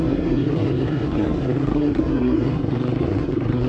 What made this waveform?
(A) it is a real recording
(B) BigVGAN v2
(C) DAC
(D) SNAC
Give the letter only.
D